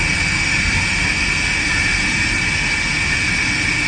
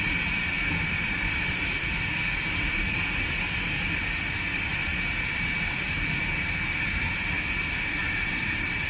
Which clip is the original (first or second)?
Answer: first